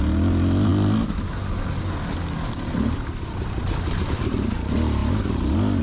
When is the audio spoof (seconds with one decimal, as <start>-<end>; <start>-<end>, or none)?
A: none